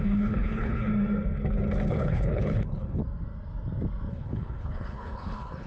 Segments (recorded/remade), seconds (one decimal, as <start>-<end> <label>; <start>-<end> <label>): 0.0-0.9 remade; 0.9-1.9 recorded; 1.9-3.0 remade; 3.0-4.1 recorded; 4.1-5.7 remade